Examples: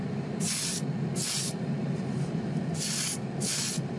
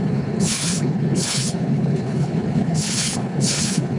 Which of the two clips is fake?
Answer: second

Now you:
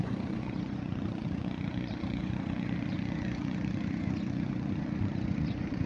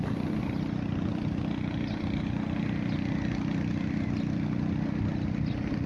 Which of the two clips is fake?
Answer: first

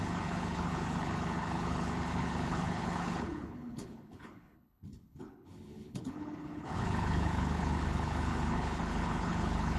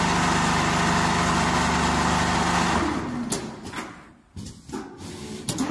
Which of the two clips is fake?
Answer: first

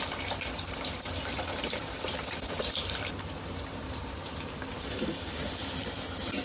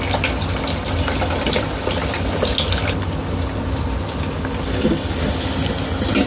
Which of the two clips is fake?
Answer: first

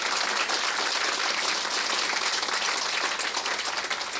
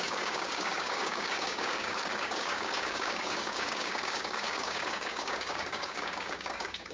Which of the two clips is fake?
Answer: second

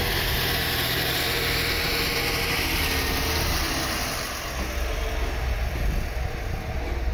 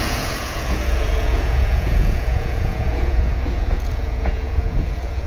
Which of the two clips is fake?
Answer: second